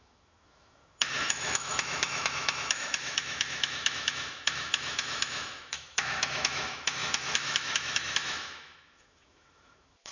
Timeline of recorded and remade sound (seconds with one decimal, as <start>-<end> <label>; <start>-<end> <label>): 0.0-10.1 remade